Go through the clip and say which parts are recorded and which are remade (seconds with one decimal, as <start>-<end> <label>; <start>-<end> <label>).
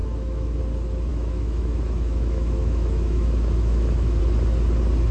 0.0-0.6 remade; 0.6-1.1 recorded; 1.1-4.2 remade; 4.2-5.1 recorded